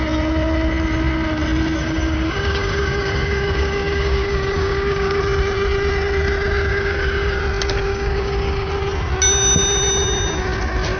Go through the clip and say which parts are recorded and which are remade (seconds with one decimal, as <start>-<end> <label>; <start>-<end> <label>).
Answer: 0.0-1.8 recorded; 1.8-5.2 remade; 5.2-6.7 recorded; 6.7-7.4 remade; 7.4-7.9 recorded; 7.9-8.7 remade; 8.7-11.0 recorded